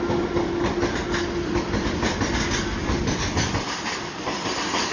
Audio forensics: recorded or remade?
recorded